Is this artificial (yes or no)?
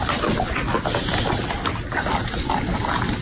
no